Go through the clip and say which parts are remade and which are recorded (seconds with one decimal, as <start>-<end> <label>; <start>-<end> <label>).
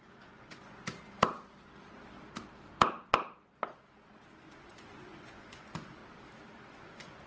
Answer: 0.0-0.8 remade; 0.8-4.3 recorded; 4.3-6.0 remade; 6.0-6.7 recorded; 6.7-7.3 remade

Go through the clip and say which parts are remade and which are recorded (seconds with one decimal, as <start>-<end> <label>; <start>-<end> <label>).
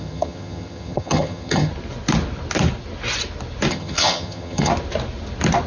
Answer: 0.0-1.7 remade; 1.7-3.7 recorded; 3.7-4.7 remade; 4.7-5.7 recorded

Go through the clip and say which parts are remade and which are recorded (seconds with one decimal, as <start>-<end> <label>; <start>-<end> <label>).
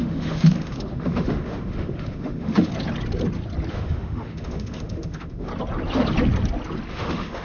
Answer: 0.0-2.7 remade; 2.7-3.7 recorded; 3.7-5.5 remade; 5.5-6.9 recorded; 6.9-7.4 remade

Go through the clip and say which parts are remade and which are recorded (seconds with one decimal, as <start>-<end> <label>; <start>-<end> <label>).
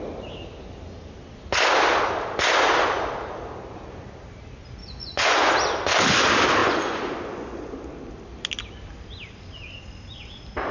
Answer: 0.0-4.8 recorded; 4.8-5.5 remade; 5.5-6.6 recorded; 6.6-7.6 remade; 7.6-10.7 recorded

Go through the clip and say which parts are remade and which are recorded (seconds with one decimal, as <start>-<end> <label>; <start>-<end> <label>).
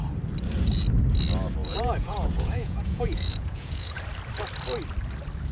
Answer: 0.0-1.6 recorded; 1.6-4.0 remade; 4.0-5.5 recorded